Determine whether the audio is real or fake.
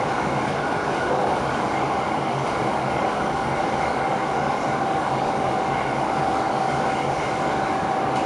fake